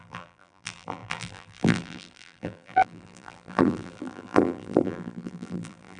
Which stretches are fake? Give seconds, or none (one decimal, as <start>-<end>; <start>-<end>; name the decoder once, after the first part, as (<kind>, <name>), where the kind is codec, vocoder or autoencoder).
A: 0.0-6.0 (vocoder, BigVGAN v2)